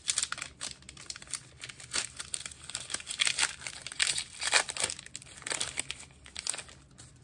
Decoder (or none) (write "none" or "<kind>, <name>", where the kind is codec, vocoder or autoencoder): none